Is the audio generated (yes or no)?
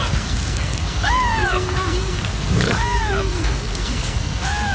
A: yes